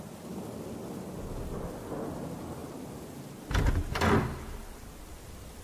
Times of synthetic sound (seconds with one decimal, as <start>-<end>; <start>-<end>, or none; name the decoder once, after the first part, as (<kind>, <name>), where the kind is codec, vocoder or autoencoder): none